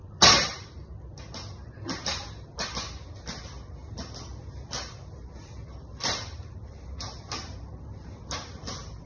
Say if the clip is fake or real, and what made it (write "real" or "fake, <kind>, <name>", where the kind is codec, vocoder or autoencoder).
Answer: real